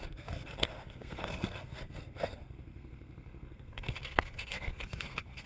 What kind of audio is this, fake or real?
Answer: fake